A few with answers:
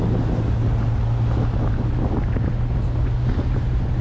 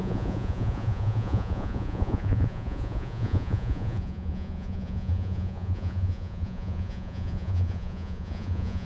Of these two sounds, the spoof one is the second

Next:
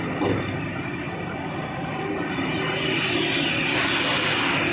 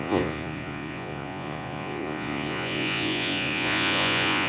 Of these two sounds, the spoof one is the second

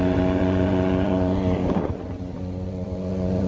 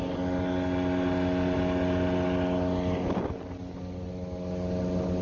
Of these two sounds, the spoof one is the first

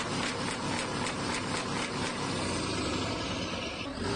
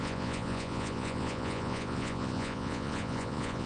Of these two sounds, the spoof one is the second